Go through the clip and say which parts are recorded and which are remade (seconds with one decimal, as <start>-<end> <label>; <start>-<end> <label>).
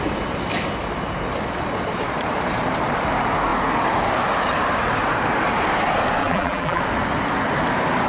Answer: 0.0-6.2 recorded; 6.2-6.8 remade; 6.8-8.1 recorded